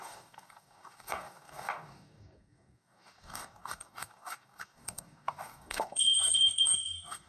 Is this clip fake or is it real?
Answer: fake